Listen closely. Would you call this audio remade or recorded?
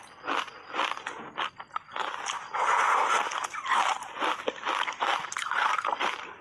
recorded